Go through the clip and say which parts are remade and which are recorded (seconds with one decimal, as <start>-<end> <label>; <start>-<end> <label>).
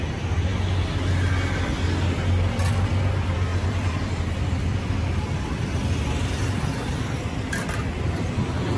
0.0-8.8 recorded